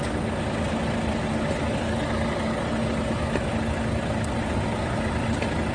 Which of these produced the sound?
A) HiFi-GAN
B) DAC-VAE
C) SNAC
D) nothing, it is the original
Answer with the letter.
D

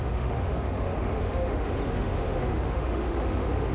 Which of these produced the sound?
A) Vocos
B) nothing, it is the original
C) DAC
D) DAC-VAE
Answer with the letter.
D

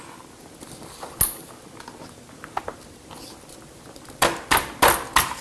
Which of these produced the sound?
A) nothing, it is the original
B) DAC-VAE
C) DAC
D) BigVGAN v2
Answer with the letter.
A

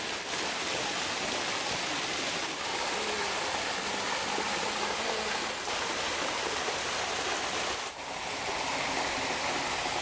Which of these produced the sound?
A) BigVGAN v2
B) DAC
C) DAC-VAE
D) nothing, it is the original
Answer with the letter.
D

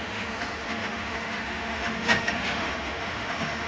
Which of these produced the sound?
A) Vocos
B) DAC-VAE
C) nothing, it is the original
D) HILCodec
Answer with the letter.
B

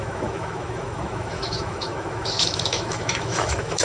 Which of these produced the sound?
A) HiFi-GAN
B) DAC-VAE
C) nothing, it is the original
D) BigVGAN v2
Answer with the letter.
B